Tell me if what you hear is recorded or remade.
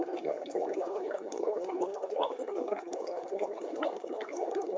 remade